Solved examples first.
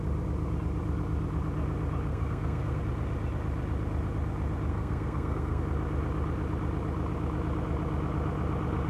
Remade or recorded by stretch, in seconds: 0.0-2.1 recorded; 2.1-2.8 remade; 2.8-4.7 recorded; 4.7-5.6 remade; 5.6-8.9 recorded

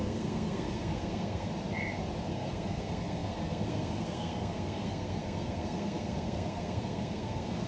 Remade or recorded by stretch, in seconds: 0.0-1.5 remade; 1.5-2.3 recorded; 2.3-7.7 remade